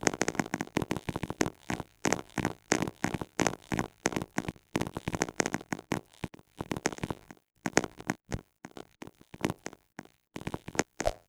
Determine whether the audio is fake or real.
fake